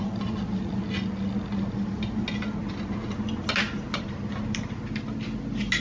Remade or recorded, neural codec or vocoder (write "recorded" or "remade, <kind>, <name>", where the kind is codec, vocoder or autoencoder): recorded